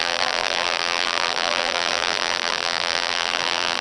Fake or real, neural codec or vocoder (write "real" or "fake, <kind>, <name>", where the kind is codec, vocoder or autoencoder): fake, vocoder, BigVGAN v2